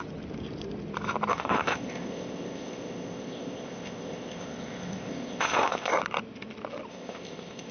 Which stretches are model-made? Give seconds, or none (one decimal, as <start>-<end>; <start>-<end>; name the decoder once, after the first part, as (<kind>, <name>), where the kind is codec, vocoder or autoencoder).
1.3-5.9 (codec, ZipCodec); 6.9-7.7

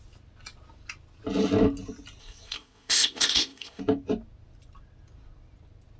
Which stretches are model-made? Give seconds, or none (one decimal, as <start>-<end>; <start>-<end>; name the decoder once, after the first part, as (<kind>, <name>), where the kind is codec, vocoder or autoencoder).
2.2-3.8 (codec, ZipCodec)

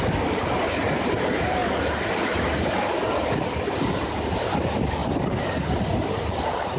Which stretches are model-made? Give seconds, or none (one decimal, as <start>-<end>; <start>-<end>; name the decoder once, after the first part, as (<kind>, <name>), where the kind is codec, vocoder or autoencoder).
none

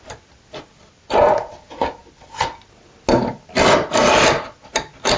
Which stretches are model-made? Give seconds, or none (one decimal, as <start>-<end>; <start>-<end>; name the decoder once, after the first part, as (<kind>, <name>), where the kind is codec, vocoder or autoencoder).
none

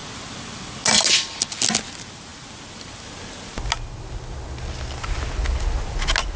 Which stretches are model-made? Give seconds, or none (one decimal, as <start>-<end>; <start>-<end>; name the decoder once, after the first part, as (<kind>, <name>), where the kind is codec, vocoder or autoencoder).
none